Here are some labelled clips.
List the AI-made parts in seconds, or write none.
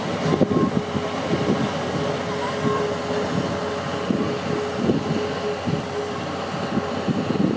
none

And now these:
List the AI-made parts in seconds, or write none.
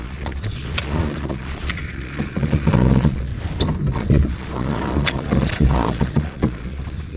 0.0-3.3 (vocoder, Vocos); 3.9-7.2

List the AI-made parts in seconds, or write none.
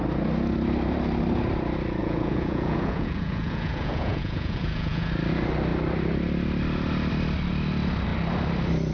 2.0-5.1 (vocoder, Vocos)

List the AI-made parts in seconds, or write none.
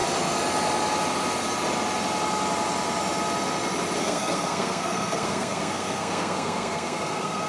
4.0-7.5 (codec, SNAC)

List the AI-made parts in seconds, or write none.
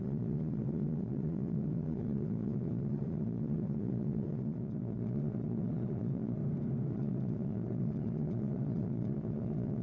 0.0-6.4 (vocoder, Vocos); 6.9-9.8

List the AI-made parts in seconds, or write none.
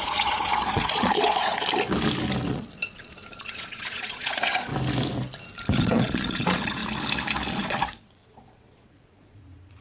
0.0-1.6 (vocoder, Vocos); 2.5-4.7; 5.7-6.8; 7.5-9.8